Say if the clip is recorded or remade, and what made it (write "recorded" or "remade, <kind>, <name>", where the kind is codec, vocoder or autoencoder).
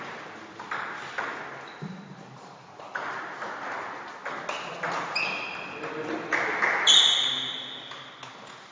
recorded